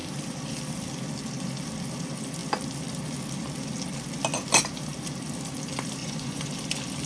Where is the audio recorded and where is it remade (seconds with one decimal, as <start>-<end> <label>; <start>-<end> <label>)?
0.0-6.0 recorded; 6.0-6.5 remade; 6.5-7.1 recorded